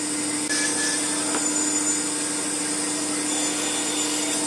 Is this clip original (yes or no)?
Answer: yes